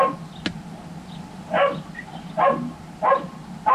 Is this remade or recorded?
recorded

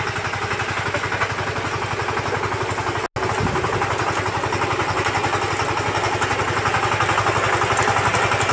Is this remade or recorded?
recorded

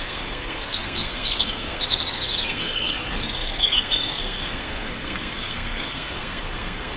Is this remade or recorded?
remade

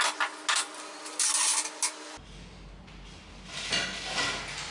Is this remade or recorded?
recorded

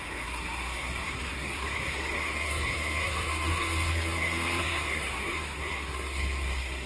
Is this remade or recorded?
remade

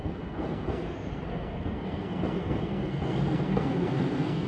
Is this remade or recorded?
remade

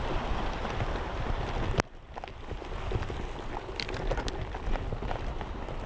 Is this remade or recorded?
recorded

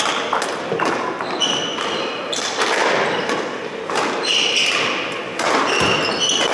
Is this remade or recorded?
recorded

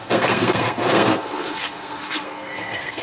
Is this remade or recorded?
remade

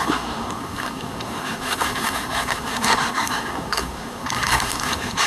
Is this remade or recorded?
remade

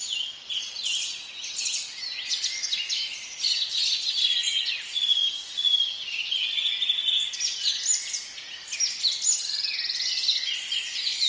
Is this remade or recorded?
recorded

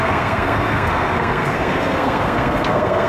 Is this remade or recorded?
remade